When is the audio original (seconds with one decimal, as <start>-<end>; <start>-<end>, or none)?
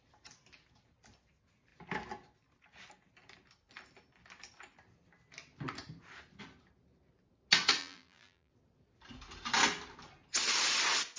0.0-7.8; 8.5-11.2